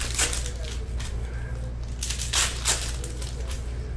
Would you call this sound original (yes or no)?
yes